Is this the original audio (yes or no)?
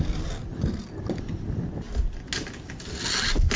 yes